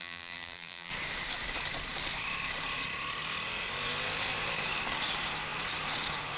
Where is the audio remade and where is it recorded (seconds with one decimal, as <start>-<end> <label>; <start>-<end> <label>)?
0.0-0.9 remade; 0.9-6.4 recorded